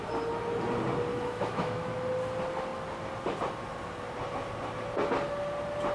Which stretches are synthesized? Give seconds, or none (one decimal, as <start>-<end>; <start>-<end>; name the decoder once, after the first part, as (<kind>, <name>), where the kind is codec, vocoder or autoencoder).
1.1-1.9 (autoencoder, DAC-VAE)